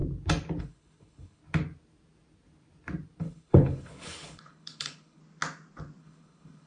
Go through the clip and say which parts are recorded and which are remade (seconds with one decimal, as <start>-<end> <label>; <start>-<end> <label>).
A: 0.0-0.6 recorded; 0.6-1.4 remade; 1.4-3.2 recorded; 3.2-5.2 remade; 5.2-6.0 recorded; 6.0-6.7 remade